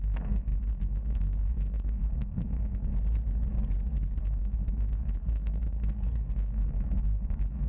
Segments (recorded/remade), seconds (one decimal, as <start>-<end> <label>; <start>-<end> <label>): 0.0-2.9 remade; 2.9-4.2 recorded; 4.2-7.7 remade